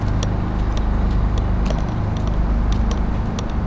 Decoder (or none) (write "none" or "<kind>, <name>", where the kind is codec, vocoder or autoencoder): none